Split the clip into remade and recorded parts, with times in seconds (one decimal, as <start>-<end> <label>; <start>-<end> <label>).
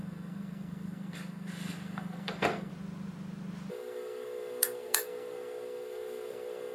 0.0-2.7 remade; 2.7-3.7 recorded; 3.7-6.7 remade